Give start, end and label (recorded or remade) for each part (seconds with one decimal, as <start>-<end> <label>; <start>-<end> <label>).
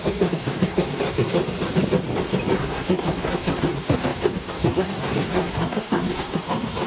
0.0-1.4 remade; 1.4-2.6 recorded; 2.6-6.9 remade